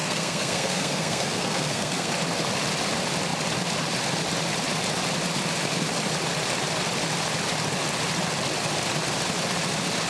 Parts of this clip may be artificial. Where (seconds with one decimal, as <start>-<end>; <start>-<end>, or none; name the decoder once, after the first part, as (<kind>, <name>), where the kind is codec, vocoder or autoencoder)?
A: 0.0-2.1 (codec, SNAC)